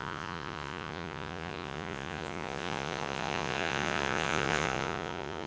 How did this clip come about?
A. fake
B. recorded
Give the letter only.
A